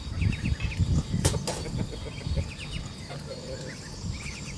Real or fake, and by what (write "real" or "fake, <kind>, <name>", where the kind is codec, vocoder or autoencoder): real